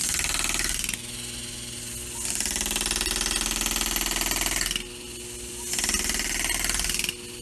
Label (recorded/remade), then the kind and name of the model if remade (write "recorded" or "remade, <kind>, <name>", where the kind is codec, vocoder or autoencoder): recorded